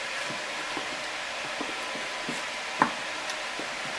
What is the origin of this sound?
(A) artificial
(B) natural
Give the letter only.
A